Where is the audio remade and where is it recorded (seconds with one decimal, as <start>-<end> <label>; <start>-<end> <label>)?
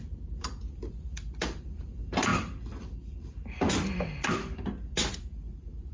0.0-5.9 recorded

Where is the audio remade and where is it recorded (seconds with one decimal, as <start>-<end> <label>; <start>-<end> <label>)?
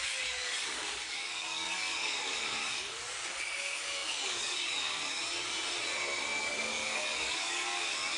0.0-5.2 remade; 5.2-6.4 recorded; 6.4-8.2 remade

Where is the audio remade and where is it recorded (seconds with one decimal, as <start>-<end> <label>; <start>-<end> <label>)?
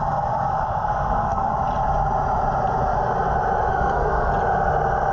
0.0-0.5 recorded; 0.5-1.5 remade; 1.5-3.7 recorded; 3.7-4.3 remade; 4.3-5.1 recorded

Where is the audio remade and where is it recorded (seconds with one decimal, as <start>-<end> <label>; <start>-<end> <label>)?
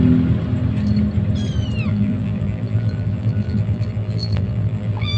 0.0-1.9 recorded; 1.9-5.2 remade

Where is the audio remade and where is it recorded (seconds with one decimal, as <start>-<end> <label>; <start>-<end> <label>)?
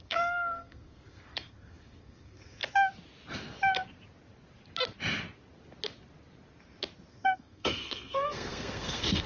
0.0-2.6 remade; 2.6-7.1 recorded; 7.1-9.3 remade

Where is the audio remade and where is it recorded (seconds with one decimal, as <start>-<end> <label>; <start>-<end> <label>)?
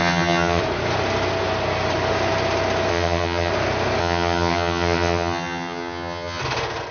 0.0-0.6 remade; 0.6-2.9 recorded; 2.9-3.5 remade; 3.5-4.0 recorded; 4.0-6.4 remade; 6.4-6.9 recorded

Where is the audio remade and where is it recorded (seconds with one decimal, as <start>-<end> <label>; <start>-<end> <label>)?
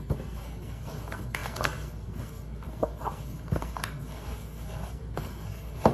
0.0-5.9 remade